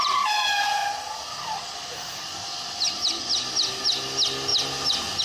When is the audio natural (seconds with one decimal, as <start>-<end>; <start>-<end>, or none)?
0.0-5.2

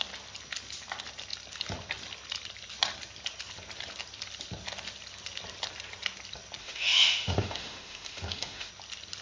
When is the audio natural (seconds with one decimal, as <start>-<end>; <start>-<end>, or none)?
0.0-6.6; 8.7-9.2

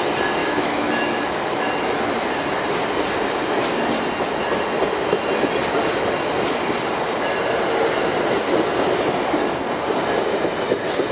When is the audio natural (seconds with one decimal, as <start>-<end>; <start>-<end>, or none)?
0.0-0.4; 1.7-11.1

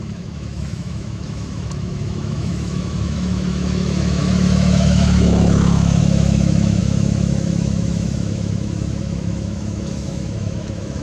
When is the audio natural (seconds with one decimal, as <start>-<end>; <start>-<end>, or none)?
none

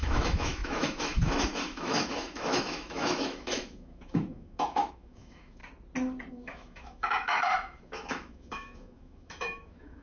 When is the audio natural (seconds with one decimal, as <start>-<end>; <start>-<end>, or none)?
5.6-6.3